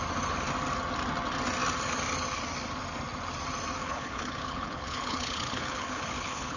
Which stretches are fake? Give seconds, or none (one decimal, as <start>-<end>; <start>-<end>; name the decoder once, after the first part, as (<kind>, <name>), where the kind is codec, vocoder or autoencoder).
3.8-6.6 (codec, HILCodec)